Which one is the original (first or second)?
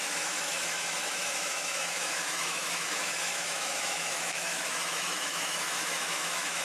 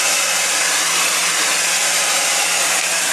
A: second